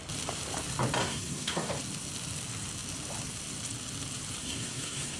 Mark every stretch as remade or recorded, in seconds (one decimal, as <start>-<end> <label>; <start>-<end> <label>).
0.0-1.0 recorded; 1.0-1.7 remade; 1.7-4.4 recorded; 4.4-5.2 remade